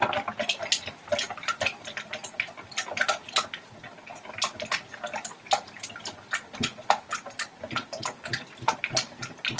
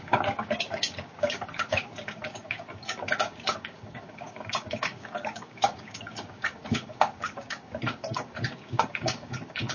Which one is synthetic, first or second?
second